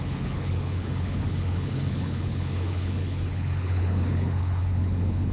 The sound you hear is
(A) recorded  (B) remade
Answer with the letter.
B